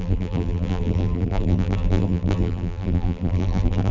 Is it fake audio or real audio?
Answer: fake